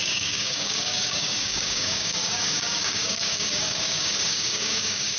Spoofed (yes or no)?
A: yes